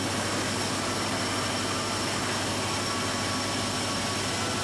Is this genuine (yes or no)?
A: yes